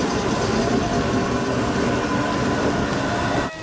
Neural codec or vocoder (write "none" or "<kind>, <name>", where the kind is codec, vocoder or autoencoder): none